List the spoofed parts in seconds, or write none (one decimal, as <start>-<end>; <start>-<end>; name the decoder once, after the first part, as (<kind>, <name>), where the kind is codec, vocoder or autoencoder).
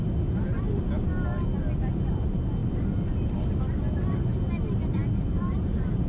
none